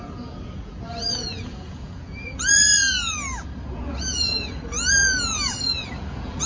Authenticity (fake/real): fake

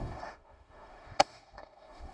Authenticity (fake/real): fake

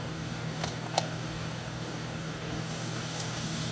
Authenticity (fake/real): fake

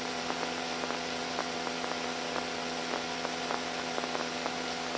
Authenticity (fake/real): real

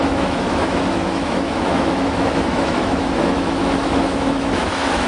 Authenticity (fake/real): fake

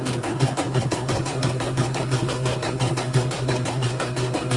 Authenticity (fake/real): fake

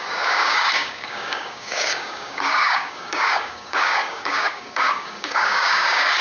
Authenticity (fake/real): fake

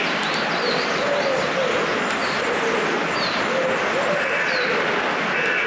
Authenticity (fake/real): real